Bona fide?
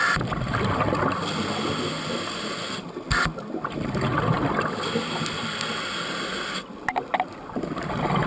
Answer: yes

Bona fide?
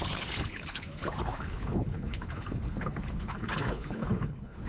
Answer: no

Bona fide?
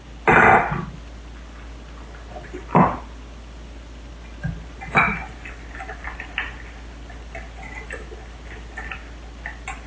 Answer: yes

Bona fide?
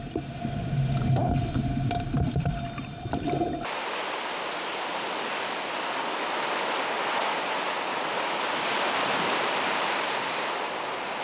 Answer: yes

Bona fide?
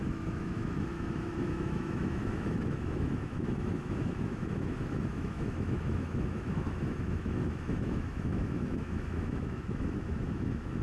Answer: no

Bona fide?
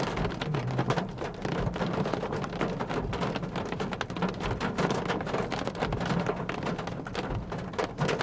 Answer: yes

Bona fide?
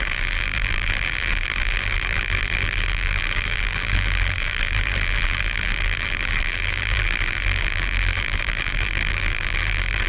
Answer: no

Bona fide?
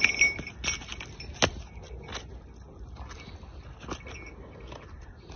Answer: yes